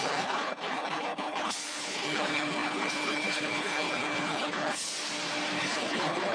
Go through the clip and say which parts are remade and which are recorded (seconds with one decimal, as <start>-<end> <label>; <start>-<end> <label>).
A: 0.0-4.9 remade; 4.9-5.6 recorded; 5.6-6.3 remade